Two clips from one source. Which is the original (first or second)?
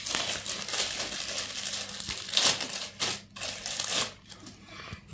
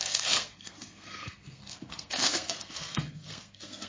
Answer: first